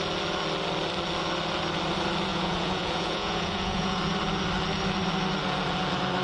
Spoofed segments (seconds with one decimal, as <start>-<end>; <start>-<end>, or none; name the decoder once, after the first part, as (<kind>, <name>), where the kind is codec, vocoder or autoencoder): 2.3-4.0 (vocoder, Vocos)

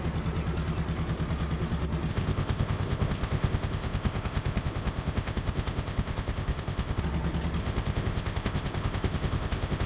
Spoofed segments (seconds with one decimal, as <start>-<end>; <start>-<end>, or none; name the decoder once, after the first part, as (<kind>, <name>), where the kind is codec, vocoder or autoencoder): 2.1-7.0 (codec, ZipCodec); 7.6-9.9